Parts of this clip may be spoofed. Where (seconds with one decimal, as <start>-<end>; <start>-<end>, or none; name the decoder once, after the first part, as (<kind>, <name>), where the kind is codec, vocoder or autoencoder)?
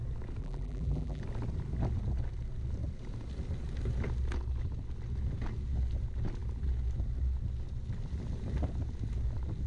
0.4-1.2 (vocoder, BigVGAN v2)